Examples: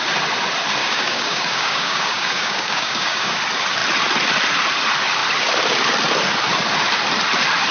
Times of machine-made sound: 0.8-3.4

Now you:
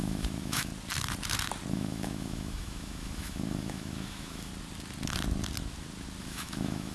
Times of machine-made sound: 0.0-0.7; 1.7-4.5; 6.2-6.9

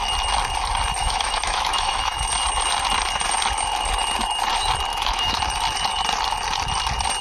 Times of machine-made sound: 1.0-2.2; 4.9-5.4

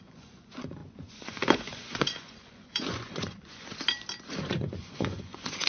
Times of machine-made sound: 0.0-3.7; 4.4-5.7

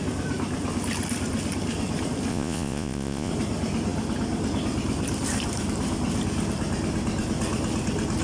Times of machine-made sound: 2.3-3.3